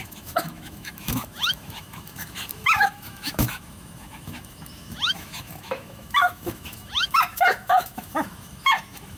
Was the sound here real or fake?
fake